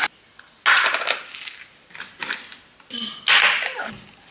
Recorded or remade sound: recorded